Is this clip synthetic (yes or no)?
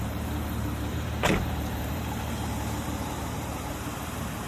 yes